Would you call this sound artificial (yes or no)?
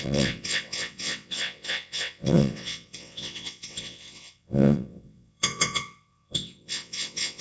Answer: yes